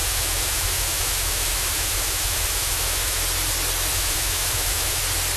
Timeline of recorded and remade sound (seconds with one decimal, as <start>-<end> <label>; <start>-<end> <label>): 0.0-3.2 remade; 3.2-3.9 recorded; 3.9-5.0 remade; 5.0-5.4 recorded